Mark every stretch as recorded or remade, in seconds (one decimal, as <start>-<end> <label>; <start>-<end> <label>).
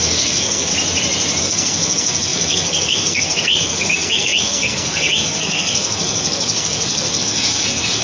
0.0-0.7 remade; 0.7-1.4 recorded; 1.4-8.0 remade